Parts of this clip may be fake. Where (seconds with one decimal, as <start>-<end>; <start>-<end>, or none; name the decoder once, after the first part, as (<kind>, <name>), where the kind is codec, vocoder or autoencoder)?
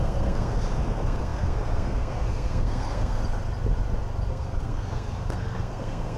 0.0-3.2 (codec, SNAC); 4.3-6.2